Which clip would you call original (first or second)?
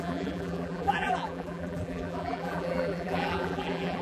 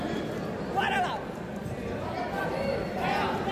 second